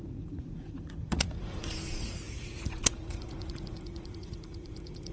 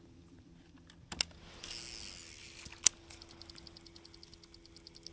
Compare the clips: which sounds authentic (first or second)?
second